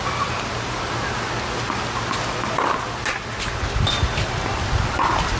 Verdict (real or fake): real